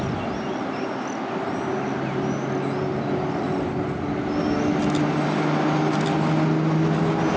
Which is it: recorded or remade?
recorded